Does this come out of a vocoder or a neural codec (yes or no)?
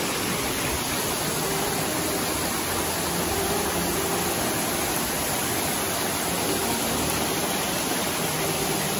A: no